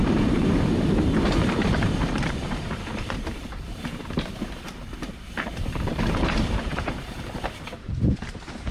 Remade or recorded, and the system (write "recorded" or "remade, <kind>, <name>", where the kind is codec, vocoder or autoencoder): remade, vocoder, BigVGAN v2